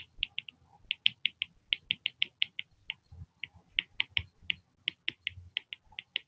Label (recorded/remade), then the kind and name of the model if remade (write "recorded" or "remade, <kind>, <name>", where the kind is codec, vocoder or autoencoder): recorded